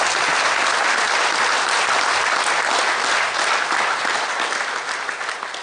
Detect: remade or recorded recorded